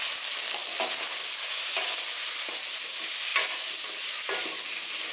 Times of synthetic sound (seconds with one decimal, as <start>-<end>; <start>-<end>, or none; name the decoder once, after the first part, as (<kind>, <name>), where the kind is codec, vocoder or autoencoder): none